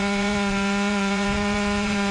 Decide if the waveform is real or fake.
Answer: fake